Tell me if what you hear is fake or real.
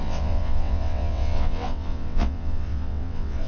fake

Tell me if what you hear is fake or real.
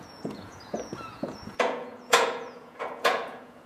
fake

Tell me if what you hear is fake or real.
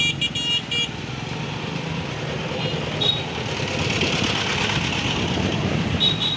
real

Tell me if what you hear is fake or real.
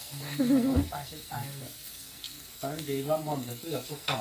fake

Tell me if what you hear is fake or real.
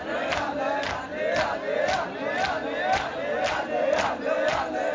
real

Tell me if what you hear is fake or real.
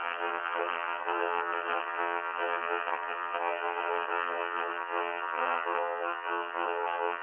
fake